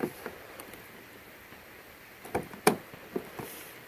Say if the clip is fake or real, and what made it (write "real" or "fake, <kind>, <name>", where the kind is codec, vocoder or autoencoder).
fake, vocoder, BigVGAN v2